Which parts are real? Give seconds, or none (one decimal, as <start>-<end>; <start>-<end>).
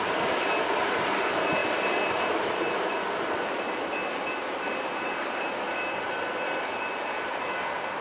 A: none